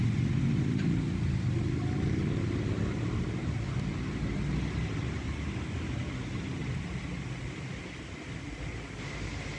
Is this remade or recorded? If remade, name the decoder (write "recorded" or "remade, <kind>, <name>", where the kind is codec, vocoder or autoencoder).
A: recorded